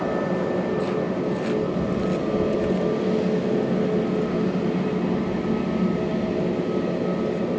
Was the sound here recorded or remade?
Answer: recorded